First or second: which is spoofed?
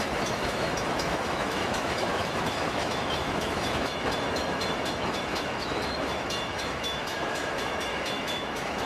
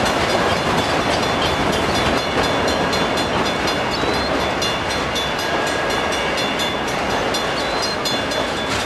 first